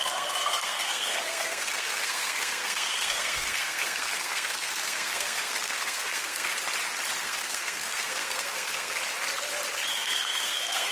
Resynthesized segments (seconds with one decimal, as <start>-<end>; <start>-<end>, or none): 0.0-6.5; 7.2-9.0; 9.9-10.9